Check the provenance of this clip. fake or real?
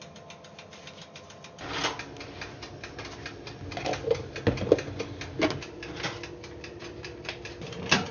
real